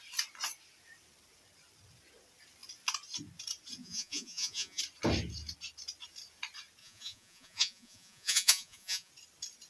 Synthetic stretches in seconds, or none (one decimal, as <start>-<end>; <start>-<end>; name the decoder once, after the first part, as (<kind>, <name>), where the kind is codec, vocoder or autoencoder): 3.8-4.8 (vocoder, Vocos); 6.8-9.1